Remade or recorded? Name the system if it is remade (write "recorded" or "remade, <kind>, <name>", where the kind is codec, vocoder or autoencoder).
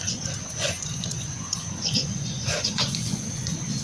remade, vocoder, Vocos